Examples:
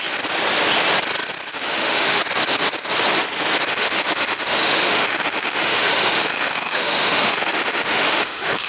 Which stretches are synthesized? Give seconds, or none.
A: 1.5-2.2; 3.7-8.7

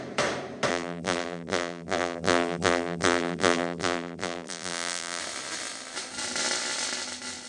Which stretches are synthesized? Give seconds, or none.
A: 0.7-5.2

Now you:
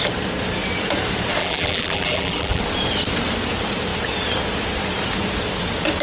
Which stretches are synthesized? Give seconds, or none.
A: 1.4-2.6

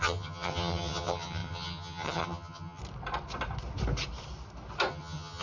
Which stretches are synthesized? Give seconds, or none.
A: 0.0-2.8; 4.9-5.4

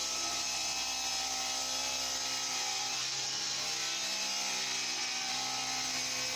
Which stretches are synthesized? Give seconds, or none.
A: none

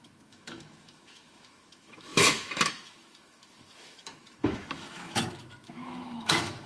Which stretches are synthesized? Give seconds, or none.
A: 0.0-6.7

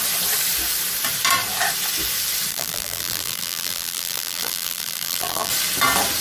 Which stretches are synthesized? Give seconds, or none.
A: 2.5-5.5

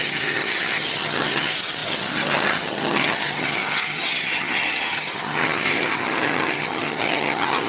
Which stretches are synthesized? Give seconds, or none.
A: 0.0-7.7